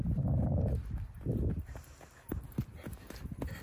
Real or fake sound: real